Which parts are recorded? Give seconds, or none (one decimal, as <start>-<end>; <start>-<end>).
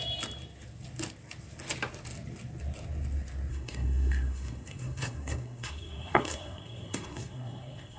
0.0-3.5